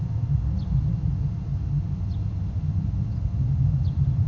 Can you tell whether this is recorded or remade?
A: recorded